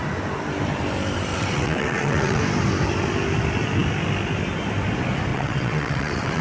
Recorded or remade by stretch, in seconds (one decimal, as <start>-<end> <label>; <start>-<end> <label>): 0.0-1.3 recorded; 1.3-2.4 remade; 2.4-5.3 recorded; 5.3-6.4 remade